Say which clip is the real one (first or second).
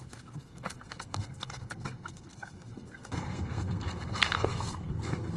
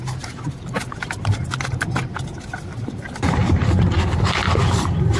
second